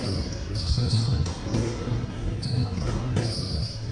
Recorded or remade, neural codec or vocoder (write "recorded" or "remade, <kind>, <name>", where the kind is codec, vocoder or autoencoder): remade, codec, SNAC